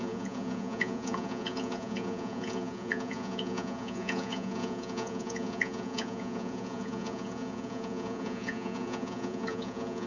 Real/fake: fake